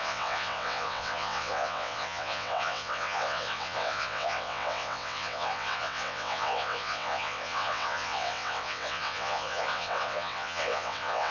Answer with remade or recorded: remade